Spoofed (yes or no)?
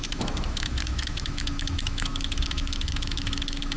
yes